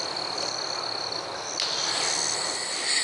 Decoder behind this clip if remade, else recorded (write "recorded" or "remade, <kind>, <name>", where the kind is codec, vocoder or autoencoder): recorded